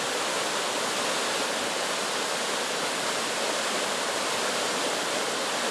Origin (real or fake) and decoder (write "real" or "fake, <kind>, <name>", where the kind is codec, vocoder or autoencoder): real